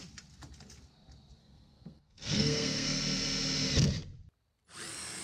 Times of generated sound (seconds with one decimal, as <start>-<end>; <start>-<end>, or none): 1.4-3.0